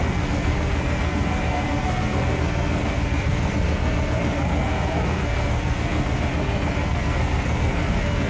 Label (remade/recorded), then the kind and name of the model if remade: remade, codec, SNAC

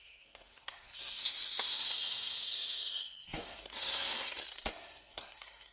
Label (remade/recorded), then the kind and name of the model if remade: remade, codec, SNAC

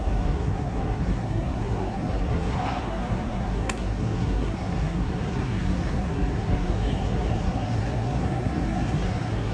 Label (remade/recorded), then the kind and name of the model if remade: remade, codec, SNAC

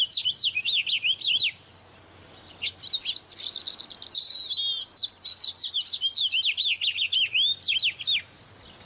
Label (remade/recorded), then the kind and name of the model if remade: recorded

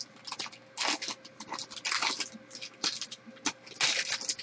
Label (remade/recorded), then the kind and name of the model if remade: recorded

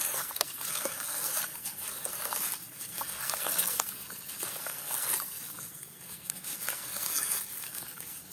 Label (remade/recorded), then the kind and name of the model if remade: remade, codec, SNAC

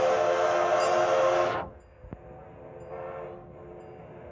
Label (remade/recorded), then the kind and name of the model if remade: recorded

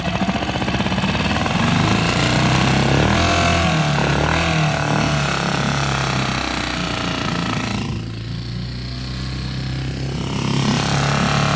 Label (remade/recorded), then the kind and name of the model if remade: recorded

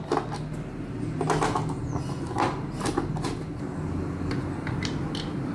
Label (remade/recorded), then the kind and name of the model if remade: recorded